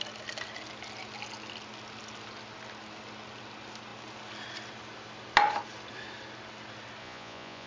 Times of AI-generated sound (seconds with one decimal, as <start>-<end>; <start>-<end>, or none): 7.0-7.7